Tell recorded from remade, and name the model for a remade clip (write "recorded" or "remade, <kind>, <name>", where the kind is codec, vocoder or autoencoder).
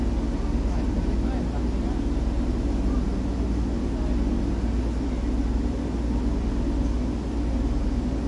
recorded